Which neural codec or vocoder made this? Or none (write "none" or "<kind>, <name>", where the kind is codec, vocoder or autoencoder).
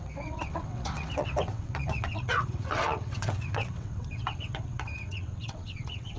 vocoder, WaveNeXt